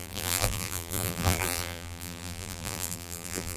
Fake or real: fake